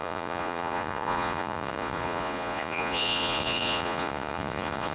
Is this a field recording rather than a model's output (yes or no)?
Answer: no